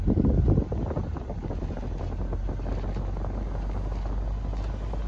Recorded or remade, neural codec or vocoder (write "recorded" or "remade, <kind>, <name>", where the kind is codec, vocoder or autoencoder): recorded